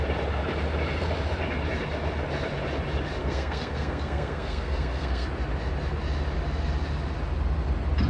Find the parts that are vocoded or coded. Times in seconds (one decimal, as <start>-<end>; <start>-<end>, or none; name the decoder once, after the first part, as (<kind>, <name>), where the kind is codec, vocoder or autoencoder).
3.2-5.3 (codec, SNAC)